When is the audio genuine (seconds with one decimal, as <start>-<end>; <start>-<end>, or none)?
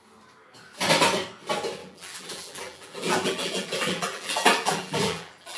0.0-1.8